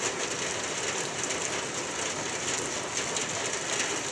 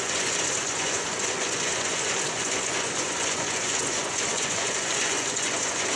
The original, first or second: first